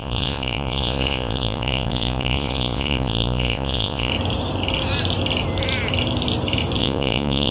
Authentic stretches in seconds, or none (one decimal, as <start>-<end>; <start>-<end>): 4.1-6.8